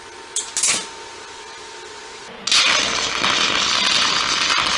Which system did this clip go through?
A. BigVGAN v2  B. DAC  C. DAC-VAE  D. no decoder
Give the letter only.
D